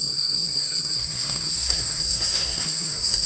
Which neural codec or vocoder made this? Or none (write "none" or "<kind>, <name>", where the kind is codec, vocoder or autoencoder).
codec, SNAC